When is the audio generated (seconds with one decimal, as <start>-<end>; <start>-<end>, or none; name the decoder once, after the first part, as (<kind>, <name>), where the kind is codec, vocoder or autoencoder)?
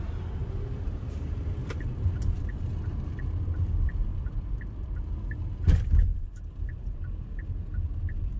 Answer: 0.4-1.1 (vocoder, BigVGAN v2); 4.1-5.4; 6.1-6.6